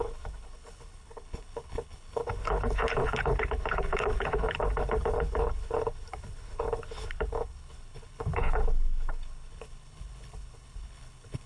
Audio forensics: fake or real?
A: fake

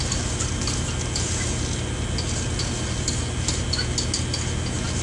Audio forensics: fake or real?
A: real